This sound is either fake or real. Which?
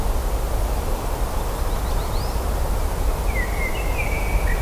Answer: real